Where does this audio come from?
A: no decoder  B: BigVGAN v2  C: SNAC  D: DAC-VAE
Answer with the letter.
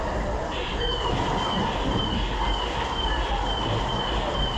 A